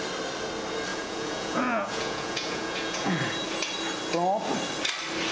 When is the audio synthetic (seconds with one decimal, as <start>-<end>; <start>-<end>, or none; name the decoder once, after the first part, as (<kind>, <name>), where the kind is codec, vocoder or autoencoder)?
0.9-3.2 (vocoder, Vocos)

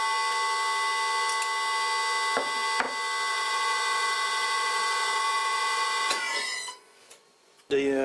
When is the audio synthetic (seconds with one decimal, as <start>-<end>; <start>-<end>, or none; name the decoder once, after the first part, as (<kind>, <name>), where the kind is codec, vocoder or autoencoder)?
3.3-7.6 (vocoder, Vocos)

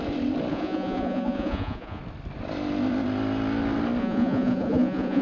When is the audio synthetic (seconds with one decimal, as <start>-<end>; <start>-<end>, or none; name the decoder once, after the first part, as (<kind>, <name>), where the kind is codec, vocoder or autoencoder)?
0.5-2.0 (vocoder, Vocos); 4.0-5.2

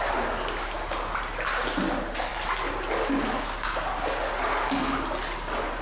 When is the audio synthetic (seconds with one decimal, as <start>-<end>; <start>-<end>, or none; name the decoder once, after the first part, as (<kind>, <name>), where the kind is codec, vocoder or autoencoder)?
none

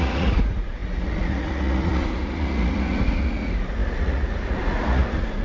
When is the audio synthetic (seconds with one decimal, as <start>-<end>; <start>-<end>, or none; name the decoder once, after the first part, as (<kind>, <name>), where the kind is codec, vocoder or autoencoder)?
0.0-5.4 (vocoder, Vocos)

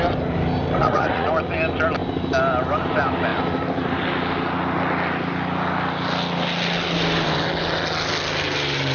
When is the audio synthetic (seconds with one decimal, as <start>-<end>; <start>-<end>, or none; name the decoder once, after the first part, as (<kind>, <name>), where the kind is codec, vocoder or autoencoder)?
0.8-1.3 (vocoder, Vocos)

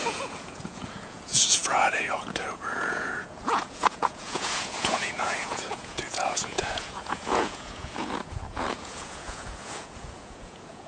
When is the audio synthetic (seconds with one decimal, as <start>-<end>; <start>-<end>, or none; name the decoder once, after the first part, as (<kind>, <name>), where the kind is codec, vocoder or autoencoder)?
0.0-10.9 (vocoder, Vocos)